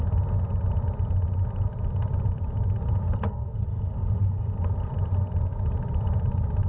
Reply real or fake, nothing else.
real